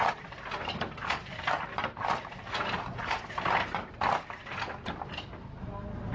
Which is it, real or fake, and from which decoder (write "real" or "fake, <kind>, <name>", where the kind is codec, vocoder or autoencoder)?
real